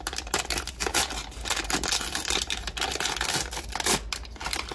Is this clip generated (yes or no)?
no